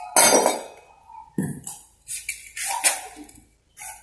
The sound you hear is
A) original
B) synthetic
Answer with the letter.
A